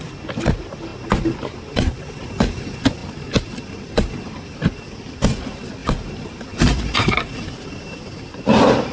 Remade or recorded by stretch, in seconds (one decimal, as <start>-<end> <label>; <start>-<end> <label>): 0.0-8.9 recorded